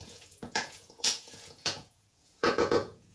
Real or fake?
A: fake